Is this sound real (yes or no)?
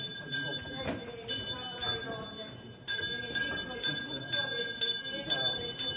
no